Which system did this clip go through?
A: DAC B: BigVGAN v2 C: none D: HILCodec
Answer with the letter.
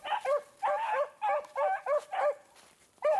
C